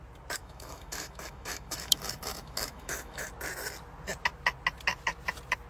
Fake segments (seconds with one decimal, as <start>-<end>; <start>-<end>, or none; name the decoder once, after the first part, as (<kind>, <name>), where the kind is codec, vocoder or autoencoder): 0.4-3.3 (autoencoder, DAC-VAE)